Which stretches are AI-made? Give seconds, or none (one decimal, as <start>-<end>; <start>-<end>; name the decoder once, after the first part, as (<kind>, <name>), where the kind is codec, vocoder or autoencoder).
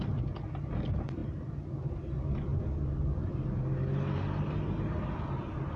none